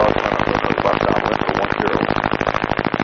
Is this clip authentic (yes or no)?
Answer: yes